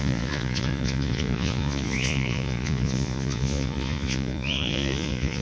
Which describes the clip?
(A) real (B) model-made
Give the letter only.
B